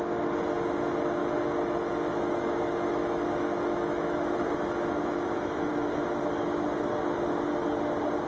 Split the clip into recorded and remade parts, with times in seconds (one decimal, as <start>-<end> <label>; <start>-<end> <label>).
0.0-1.2 recorded; 1.2-5.7 remade; 5.7-8.3 recorded